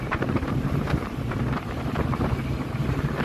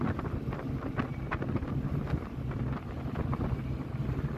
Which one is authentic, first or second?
second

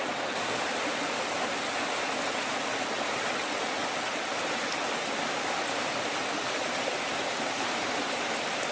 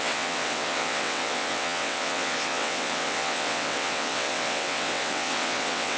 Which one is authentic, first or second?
first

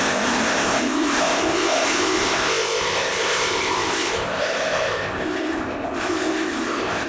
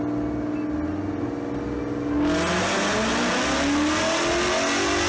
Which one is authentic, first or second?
second